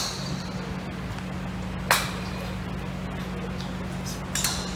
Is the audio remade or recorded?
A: recorded